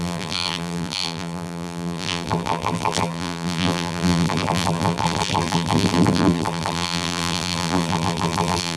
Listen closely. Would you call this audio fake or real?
fake